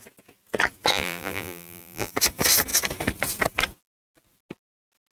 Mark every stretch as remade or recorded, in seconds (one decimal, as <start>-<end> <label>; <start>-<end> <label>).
0.0-0.9 recorded; 0.9-2.1 remade; 2.1-5.1 recorded